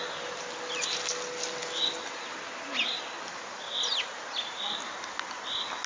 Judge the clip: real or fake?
real